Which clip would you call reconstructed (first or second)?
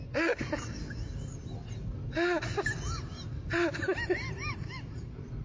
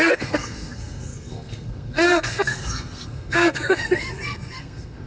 second